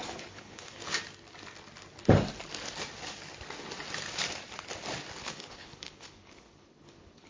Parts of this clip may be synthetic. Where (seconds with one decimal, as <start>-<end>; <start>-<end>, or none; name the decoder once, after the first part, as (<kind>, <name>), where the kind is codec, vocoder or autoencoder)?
0.0-0.8 (codec, HILCodec); 5.2-7.3